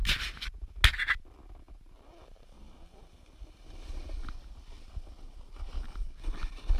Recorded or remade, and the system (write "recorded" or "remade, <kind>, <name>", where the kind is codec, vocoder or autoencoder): recorded